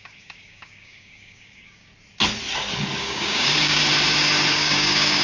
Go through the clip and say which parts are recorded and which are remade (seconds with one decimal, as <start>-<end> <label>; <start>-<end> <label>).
0.0-1.9 remade; 1.9-3.0 recorded; 3.0-3.8 remade; 3.8-4.5 recorded; 4.5-5.2 remade